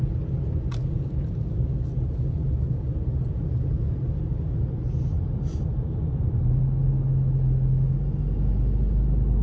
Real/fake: real